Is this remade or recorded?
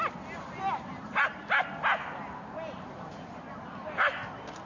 recorded